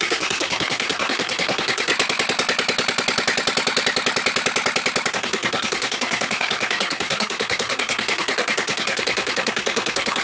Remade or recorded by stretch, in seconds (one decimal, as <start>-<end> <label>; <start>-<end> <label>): 0.0-1.9 remade; 1.9-5.1 recorded; 5.1-10.2 remade